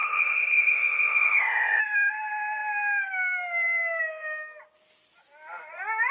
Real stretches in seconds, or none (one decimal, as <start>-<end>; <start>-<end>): 1.8-6.1